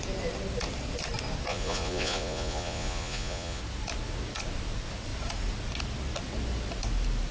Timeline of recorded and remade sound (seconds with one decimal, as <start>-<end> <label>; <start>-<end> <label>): 0.0-1.5 recorded; 1.5-3.6 remade; 3.6-7.3 recorded